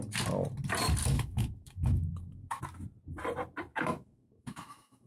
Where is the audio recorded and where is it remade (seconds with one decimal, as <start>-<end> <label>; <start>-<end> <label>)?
0.0-1.0 recorded; 1.0-2.6 remade; 2.6-3.7 recorded; 3.7-5.1 remade